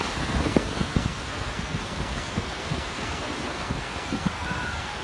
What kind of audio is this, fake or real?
fake